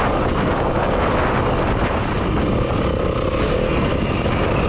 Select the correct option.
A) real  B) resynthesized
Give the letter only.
A